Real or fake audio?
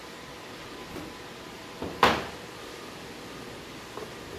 real